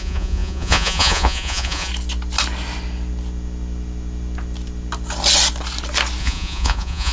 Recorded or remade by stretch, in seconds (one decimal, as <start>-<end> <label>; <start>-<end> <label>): 0.0-1.9 remade; 1.9-6.2 recorded; 6.2-7.1 remade